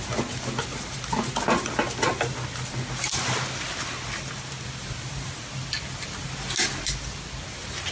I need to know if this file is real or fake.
real